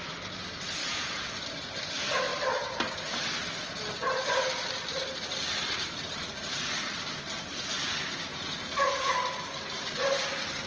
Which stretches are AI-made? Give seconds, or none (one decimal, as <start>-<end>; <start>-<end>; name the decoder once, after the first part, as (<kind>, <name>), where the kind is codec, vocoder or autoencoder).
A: 0.8-1.3 (vocoder, Vocos); 8.3-9.1